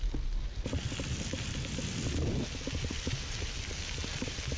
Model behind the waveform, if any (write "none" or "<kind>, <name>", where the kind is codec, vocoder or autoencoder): none